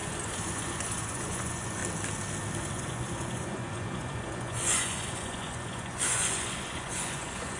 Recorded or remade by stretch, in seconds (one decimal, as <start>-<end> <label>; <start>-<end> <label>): 0.0-1.8 remade; 1.8-2.7 recorded; 2.7-7.6 remade